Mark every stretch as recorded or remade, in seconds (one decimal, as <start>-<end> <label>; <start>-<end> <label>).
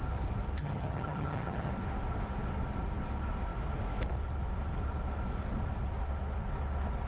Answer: 0.0-0.6 recorded; 0.6-1.7 remade; 1.7-7.1 recorded